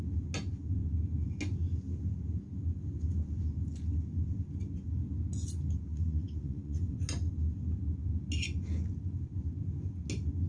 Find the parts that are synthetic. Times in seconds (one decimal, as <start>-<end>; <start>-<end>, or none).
5.9-7.0